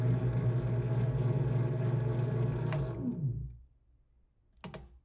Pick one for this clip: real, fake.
real